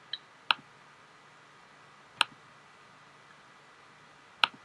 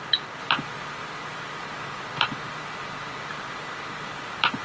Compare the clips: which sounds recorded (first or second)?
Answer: first